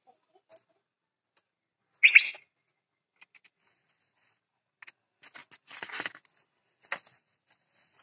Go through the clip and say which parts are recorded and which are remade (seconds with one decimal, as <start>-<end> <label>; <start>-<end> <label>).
0.0-8.0 recorded